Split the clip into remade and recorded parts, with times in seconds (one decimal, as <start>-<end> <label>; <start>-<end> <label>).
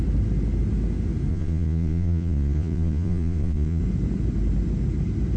0.0-1.3 recorded; 1.3-3.8 remade; 3.8-5.4 recorded